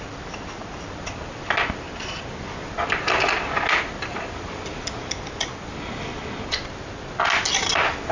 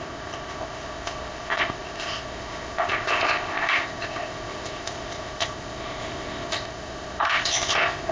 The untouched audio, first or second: first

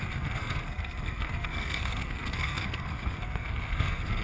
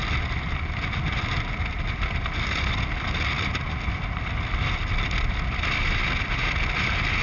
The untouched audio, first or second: second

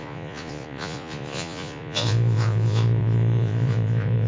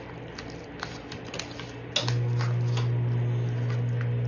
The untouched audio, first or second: second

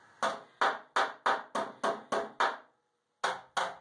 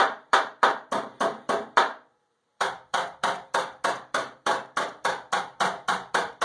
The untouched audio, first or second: first